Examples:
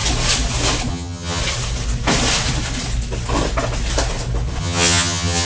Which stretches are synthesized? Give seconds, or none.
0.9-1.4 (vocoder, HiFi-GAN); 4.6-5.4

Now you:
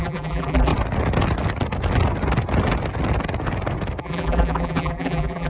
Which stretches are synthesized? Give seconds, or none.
0.0-0.7 (vocoder, BigVGAN v2); 4.0-5.5

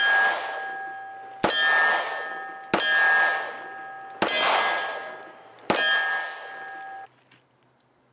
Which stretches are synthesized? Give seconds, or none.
none

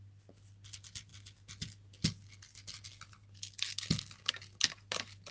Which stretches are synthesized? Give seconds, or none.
none

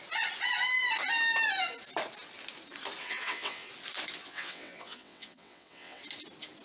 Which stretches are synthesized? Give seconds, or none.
3.0-3.7 (vocoder, WaveNeXt); 4.2-6.0

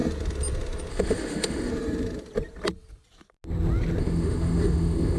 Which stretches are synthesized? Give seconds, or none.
0.9-1.7 (autoencoder, DAC-VAE); 4.0-5.2

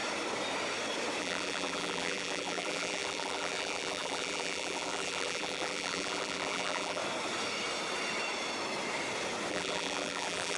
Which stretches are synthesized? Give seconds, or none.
1.2-7.0 (vocoder, BigVGAN v2); 9.5-10.6